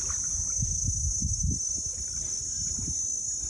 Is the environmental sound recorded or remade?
recorded